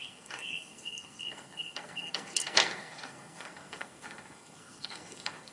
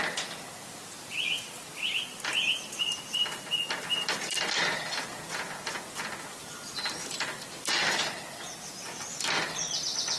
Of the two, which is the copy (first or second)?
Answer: first